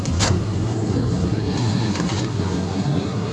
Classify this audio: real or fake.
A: fake